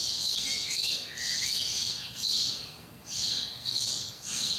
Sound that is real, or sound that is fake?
fake